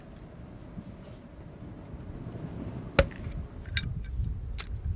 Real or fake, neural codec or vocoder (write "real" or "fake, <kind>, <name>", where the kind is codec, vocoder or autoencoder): real